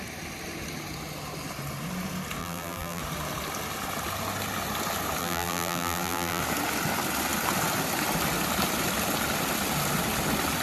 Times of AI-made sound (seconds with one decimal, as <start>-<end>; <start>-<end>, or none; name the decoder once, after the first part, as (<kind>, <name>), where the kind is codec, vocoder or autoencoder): 2.4-3.0 (vocoder, BigVGAN v2); 5.2-6.4